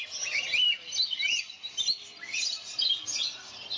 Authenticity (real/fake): real